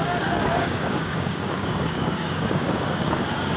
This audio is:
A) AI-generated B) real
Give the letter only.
A